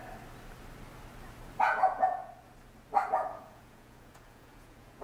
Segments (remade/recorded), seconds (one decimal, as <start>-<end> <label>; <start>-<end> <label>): 0.0-1.6 recorded; 1.6-2.2 remade; 2.2-3.1 recorded; 3.1-5.0 remade